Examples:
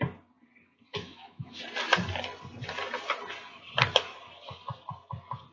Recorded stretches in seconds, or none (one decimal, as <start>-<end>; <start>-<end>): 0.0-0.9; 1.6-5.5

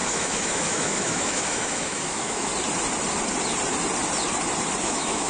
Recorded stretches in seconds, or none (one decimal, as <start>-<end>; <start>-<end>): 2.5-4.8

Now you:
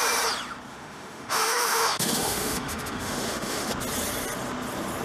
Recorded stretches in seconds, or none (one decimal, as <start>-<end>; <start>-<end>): 0.0-0.7; 3.7-5.0